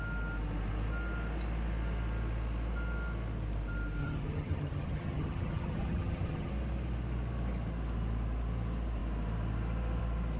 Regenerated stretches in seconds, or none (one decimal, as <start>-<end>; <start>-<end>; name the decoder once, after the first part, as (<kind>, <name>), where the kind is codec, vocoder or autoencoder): 4.0-6.5 (vocoder, HiFi-GAN)